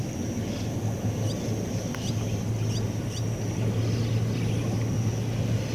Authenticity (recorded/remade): recorded